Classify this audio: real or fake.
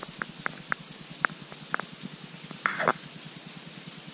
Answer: real